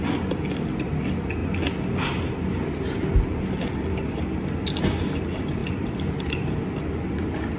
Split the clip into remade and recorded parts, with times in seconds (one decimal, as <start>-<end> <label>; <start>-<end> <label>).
0.0-7.6 recorded